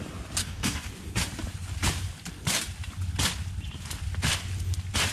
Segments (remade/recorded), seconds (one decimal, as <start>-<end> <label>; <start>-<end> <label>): 0.0-0.4 recorded; 0.4-0.9 remade; 0.9-5.1 recorded